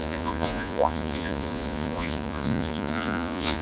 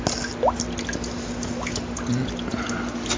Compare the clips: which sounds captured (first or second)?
second